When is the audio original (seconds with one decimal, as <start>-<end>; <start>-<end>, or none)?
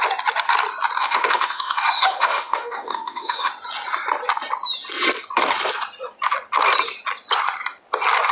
0.0-1.0; 3.5-8.3